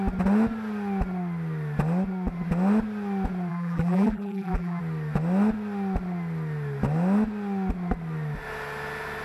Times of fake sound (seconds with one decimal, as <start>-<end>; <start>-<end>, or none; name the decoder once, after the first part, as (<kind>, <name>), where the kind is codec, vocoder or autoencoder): 3.5-4.8 (vocoder, BigVGAN v2)